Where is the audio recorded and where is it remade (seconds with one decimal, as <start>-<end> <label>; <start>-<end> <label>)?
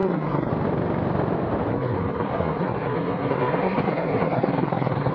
0.0-0.5 remade; 0.5-1.7 recorded; 1.7-5.1 remade